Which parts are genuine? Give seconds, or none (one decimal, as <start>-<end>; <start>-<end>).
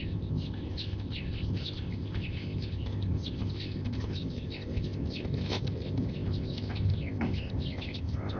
none